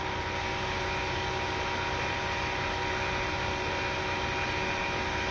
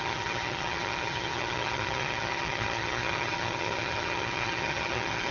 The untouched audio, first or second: first